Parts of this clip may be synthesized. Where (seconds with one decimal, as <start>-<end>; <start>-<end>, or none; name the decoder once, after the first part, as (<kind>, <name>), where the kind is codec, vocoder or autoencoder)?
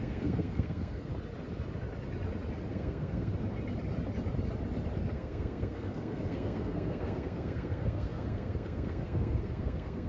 0.0-1.1 (codec, SNAC); 2.7-3.3; 5.1-10.1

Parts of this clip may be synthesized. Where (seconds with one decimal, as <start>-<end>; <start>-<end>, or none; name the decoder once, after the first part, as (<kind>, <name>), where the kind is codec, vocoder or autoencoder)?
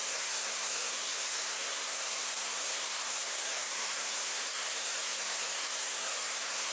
0.0-6.7 (codec, SNAC)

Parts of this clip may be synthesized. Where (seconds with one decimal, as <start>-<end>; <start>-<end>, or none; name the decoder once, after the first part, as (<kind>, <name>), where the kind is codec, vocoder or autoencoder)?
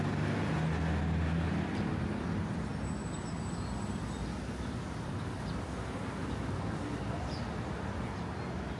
none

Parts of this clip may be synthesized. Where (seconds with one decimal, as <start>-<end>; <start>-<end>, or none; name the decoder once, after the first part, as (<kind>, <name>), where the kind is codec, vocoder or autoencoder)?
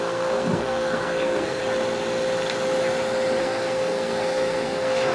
0.0-1.6 (codec, SNAC); 3.4-5.1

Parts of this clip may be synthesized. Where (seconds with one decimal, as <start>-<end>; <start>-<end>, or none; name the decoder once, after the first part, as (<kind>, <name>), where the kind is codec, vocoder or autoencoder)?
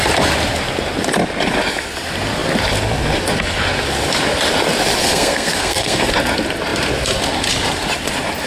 5.0-6.1 (codec, SNAC)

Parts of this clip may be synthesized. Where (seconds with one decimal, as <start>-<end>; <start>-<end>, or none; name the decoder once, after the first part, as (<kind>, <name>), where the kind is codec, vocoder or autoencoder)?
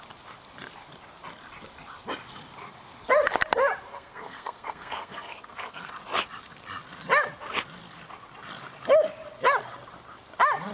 3.9-5.9 (codec, SNAC)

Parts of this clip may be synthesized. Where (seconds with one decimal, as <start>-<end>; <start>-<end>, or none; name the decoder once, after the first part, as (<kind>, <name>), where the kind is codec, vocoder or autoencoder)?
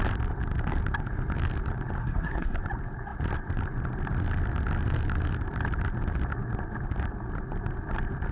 2.0-2.6 (codec, SNAC)